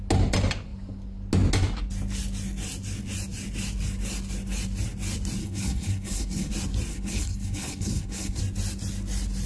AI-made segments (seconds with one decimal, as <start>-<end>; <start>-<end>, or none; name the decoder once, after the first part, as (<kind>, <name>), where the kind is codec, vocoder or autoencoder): 5.4-6.5 (codec, HILCodec); 6.9-8.4